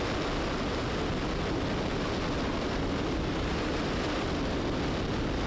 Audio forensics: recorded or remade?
recorded